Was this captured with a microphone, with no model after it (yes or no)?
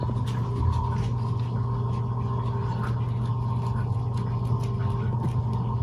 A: yes